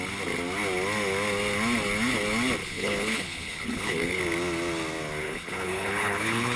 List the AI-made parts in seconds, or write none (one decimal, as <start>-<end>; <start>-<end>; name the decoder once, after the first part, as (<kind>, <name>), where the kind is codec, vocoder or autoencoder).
2.6-4.2 (codec, HILCodec); 5.2-6.6